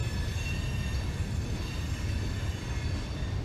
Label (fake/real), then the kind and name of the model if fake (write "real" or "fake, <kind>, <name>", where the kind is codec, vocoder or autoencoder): real